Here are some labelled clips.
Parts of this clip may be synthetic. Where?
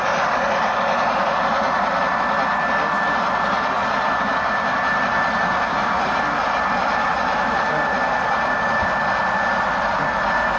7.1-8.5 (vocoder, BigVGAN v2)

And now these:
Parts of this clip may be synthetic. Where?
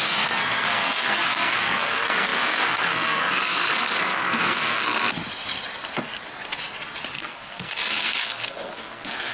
0.0-5.2 (codec, SNAC); 7.1-9.3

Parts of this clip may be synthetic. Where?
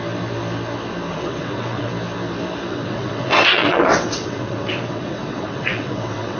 1.1-1.9 (vocoder, WaveNeXt); 2.7-6.4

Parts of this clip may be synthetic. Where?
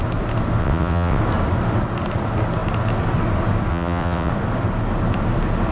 0.6-1.2 (vocoder, WaveNeXt); 3.7-4.3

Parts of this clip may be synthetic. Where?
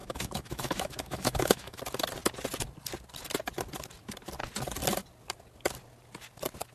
0.0-1.8 (autoencoder, DAC-VAE)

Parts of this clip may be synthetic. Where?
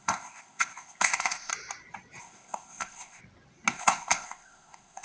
0.0-1.5 (codec, ZipCodec); 2.2-3.2; 3.7-5.0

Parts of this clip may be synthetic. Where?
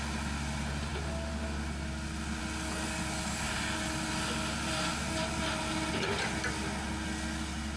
none